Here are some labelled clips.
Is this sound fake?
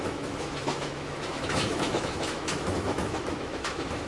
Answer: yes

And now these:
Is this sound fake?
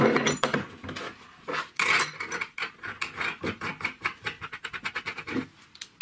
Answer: no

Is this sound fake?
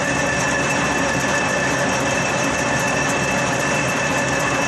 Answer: no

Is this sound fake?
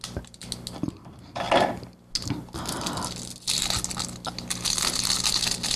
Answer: no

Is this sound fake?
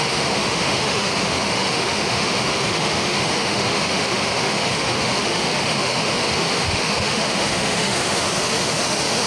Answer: yes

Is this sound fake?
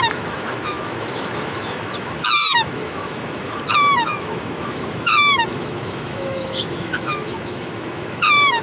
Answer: yes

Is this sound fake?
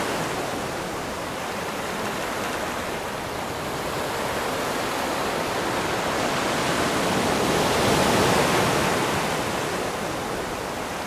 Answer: no